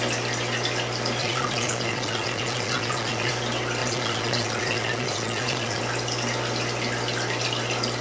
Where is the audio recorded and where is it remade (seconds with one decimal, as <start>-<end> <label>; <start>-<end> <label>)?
0.0-1.2 recorded; 1.2-3.3 remade; 3.3-3.8 recorded; 3.8-5.8 remade; 5.8-8.0 recorded

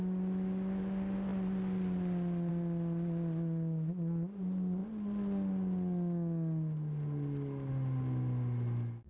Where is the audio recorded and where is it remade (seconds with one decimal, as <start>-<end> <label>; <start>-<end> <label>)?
0.0-9.1 recorded